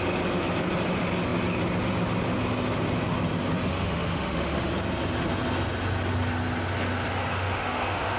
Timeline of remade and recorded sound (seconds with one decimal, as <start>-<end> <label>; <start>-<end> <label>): 0.0-3.7 recorded; 3.7-4.7 remade; 4.7-7.3 recorded; 7.3-8.2 remade